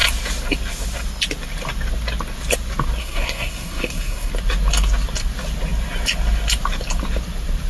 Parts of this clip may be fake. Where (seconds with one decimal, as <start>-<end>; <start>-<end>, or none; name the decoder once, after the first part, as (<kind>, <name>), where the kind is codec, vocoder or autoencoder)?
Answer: 3.0-4.3 (codec, SNAC)